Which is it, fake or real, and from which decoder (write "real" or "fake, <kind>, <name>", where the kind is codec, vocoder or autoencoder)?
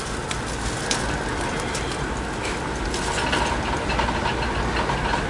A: real